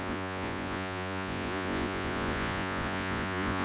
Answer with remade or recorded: remade